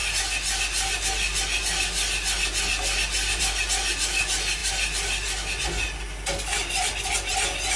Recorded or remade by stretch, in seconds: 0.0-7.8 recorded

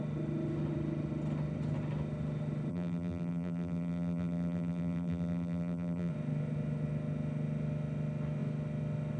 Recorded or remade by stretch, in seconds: 0.0-2.7 recorded; 2.7-6.1 remade; 6.1-9.2 recorded

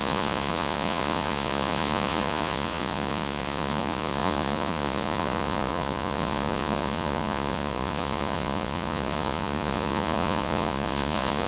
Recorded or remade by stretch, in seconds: 0.0-11.5 remade